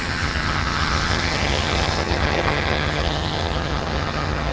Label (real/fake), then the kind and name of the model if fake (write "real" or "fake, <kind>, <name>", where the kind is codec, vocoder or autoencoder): fake, vocoder, HiFi-GAN